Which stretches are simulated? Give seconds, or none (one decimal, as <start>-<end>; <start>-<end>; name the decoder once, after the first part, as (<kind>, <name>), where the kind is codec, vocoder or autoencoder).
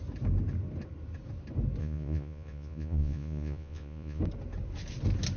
1.8-4.2 (vocoder, Vocos)